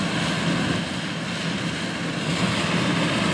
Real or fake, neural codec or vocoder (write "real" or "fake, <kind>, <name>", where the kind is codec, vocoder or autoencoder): real